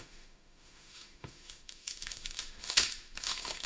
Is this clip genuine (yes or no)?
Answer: no